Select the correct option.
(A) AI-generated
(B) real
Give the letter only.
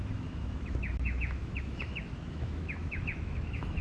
A